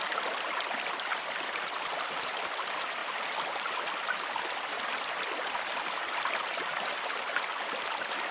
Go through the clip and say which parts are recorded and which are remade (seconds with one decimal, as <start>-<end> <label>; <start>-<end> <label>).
0.0-8.3 recorded